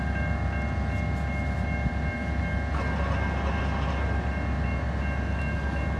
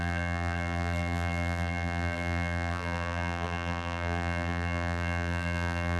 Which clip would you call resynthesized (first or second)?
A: second